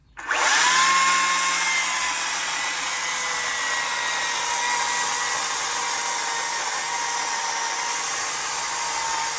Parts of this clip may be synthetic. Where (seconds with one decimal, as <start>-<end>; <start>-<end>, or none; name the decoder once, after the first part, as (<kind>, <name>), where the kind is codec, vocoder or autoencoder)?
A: none